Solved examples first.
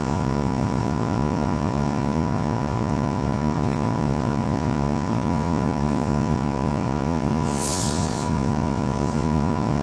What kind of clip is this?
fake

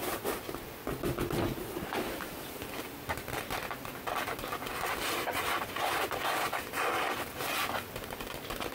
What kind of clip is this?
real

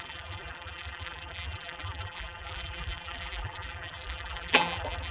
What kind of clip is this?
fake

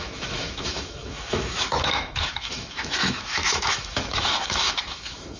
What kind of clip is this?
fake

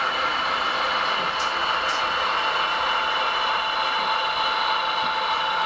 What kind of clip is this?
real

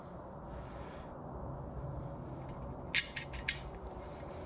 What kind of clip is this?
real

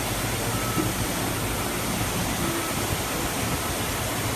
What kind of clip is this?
real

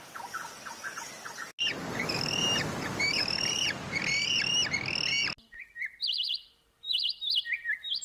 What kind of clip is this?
real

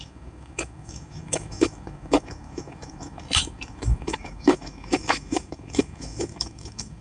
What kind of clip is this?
fake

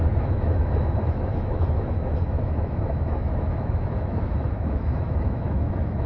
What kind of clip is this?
fake